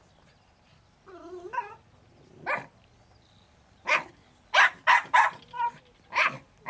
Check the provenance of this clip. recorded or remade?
recorded